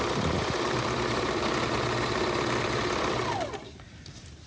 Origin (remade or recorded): remade